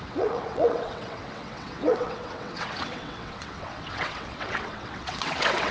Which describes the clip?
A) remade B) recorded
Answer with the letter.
A